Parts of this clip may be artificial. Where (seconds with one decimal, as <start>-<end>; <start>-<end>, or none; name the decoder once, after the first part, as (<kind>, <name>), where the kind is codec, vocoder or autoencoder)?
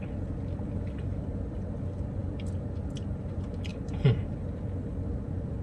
3.7-4.4 (vocoder, BigVGAN v2)